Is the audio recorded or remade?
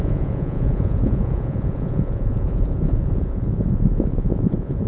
remade